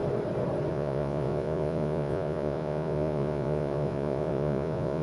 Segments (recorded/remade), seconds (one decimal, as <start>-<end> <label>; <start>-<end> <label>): 0.0-0.7 recorded; 0.7-5.0 remade